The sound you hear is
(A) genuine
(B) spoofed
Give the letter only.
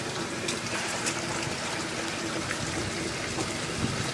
A